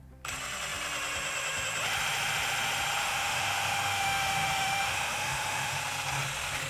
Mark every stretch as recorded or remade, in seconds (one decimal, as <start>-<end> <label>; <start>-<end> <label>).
0.0-3.0 recorded; 3.0-5.8 remade; 5.8-6.7 recorded